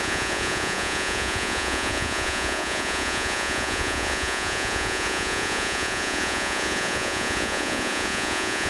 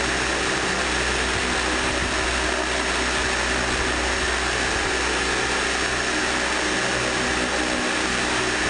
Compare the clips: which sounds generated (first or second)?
first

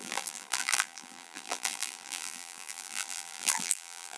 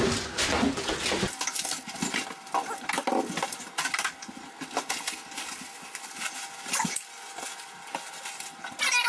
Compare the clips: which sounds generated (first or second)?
first